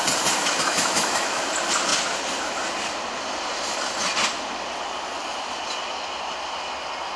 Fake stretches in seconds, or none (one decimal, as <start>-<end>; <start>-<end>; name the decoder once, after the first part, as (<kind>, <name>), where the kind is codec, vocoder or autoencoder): 0.4-1.5 (autoencoder, DAC-VAE)